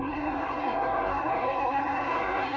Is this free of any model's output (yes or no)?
no